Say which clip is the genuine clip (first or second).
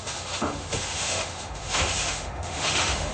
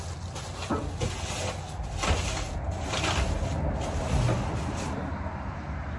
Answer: second